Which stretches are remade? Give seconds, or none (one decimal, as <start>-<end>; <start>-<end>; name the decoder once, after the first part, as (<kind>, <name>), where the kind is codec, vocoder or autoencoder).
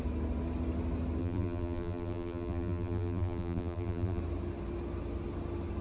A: 1.2-4.2 (vocoder, BigVGAN v2)